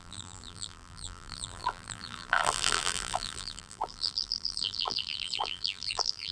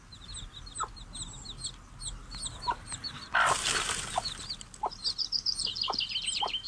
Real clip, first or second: second